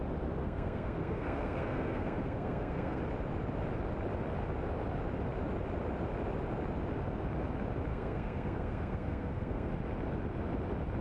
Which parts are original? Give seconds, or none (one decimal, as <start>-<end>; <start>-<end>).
0.0-0.4; 3.0-7.9; 9.7-11.0